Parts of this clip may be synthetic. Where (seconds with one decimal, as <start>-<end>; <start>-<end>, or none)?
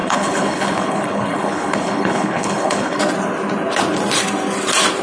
0.0-3.0